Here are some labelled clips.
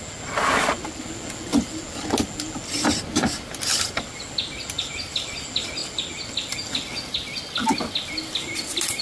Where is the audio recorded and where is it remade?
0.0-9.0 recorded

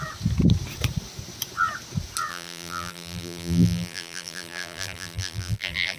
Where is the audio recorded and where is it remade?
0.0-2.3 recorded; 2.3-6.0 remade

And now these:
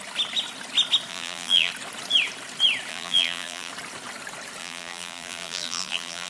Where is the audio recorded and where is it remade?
0.0-1.1 recorded; 1.1-1.7 remade; 1.7-2.9 recorded; 2.9-3.7 remade; 3.7-4.6 recorded; 4.6-6.3 remade

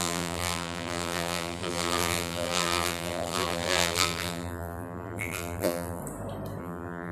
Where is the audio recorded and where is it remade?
0.0-6.0 remade; 6.0-6.6 recorded; 6.6-7.1 remade

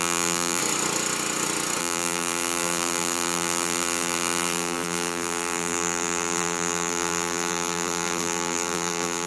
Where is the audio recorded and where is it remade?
0.0-0.6 remade; 0.6-1.8 recorded; 1.8-9.3 remade

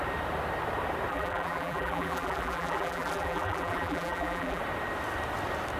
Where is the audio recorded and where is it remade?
0.0-1.1 recorded; 1.1-4.6 remade; 4.6-5.8 recorded